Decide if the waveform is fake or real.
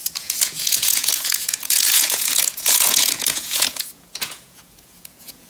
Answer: fake